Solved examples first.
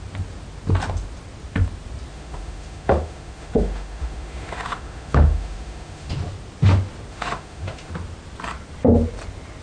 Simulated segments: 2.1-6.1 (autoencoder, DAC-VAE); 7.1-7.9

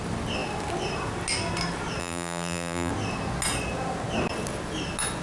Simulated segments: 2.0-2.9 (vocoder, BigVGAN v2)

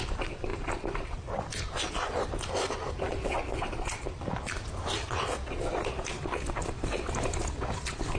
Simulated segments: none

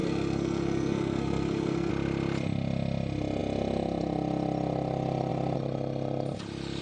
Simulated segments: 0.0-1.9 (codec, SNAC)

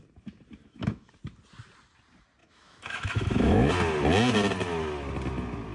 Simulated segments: 0.6-1.1 (autoencoder, DAC-VAE); 2.4-3.7

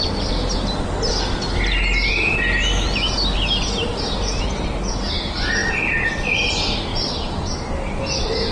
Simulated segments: 5.6-6.5 (vocoder, BigVGAN v2)